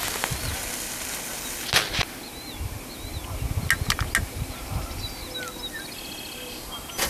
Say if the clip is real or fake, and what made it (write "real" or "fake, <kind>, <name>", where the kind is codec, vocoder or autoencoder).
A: real